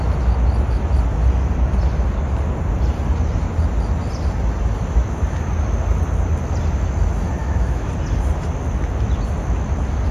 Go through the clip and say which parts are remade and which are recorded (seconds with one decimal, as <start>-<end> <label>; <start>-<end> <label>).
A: 0.0-7.4 recorded; 7.4-7.9 remade; 7.9-10.1 recorded